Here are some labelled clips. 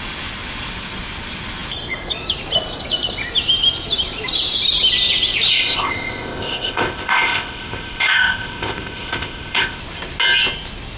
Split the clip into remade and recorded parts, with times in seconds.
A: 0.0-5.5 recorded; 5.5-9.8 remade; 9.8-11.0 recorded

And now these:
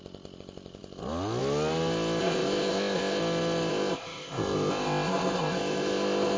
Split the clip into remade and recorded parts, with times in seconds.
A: 0.0-2.2 recorded; 2.2-3.2 remade; 3.2-3.7 recorded; 3.7-6.4 remade